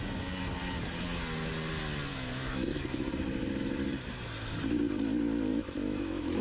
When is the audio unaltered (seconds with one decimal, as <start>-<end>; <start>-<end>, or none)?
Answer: 0.0-2.1; 3.1-5.5

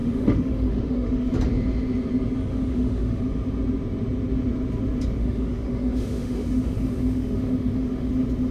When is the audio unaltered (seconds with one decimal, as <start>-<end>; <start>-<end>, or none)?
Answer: 1.3-2.5; 3.2-5.2; 8.1-8.5

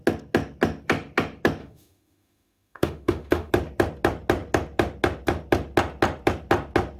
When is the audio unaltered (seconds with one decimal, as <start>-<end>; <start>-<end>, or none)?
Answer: 0.0-1.6; 3.5-7.0

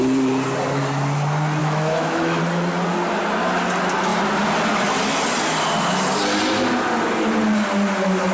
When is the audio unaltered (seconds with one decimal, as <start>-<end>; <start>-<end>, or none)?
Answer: 0.0-1.6; 2.4-8.3

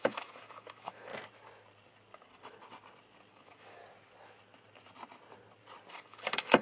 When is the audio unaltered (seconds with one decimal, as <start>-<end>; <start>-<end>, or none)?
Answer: 1.1-3.3; 3.8-5.9

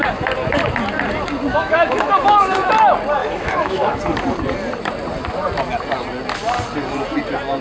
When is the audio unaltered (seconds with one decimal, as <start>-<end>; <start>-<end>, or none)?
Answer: 0.0-1.5; 2.7-3.2; 4.0-7.6

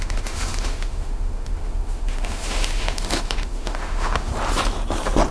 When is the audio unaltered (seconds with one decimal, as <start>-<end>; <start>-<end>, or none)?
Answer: 4.3-5.3

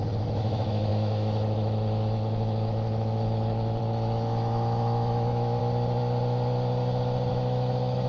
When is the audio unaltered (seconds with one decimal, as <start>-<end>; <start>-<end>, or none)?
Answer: 5.6-7.3